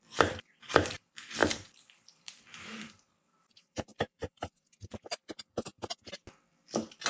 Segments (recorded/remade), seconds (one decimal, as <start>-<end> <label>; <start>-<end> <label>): 0.0-1.4 remade; 1.4-2.1 recorded; 2.1-3.9 remade; 3.9-4.9 recorded; 4.9-5.7 remade; 5.7-7.1 recorded